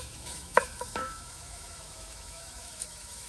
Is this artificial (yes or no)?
yes